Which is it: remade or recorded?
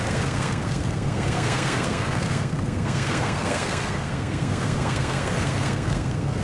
remade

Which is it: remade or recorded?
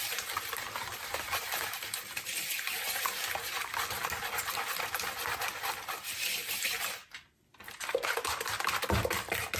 recorded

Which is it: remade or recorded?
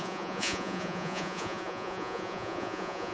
remade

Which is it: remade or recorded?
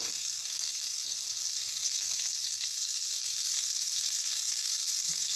remade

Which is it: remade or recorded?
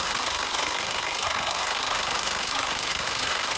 remade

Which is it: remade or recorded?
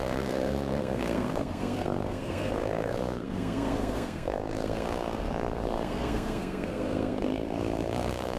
remade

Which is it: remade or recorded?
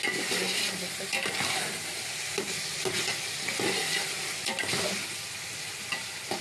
recorded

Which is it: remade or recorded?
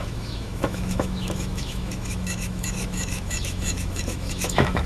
remade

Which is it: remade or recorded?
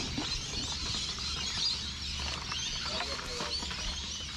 recorded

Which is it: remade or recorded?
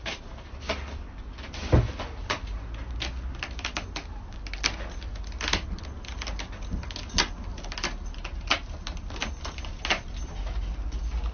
recorded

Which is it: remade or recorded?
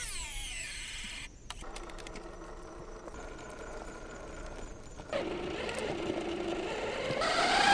recorded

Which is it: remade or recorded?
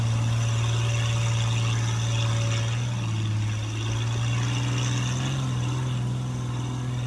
recorded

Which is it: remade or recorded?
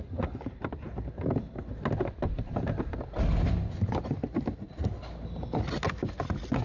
recorded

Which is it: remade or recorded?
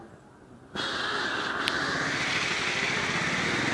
recorded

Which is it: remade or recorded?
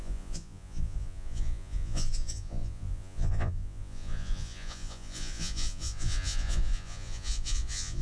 remade